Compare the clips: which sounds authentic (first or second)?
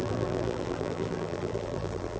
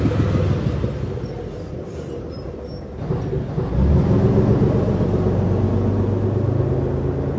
second